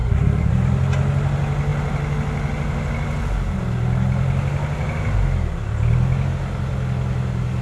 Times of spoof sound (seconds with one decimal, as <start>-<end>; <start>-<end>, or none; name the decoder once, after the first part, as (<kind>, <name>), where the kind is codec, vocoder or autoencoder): 0.0-0.5 (codec, SNAC)